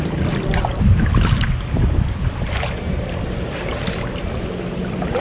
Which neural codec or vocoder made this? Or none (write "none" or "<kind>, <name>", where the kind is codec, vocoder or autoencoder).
none